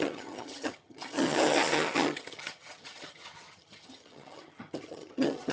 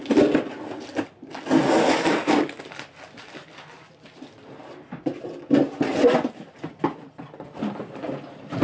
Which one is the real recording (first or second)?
second